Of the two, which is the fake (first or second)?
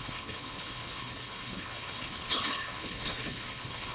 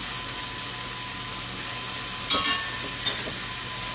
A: first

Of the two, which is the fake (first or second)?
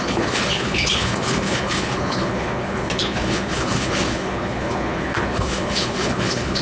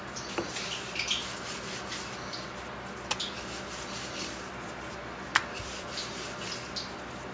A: first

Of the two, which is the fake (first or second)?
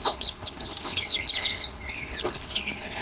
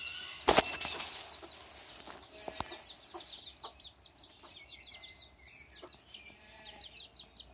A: first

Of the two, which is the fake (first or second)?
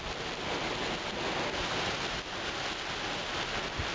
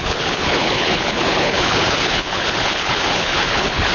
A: second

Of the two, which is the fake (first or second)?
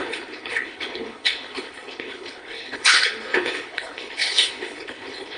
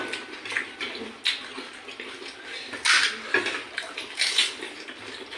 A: first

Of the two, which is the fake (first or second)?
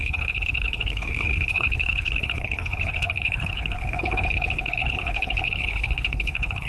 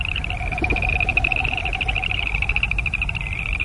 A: first